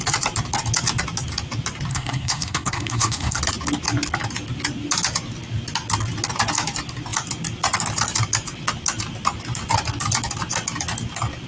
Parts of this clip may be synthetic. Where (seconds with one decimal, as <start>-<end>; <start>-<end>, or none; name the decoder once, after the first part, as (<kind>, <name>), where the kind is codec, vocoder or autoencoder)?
1.9-3.4 (codec, SNAC)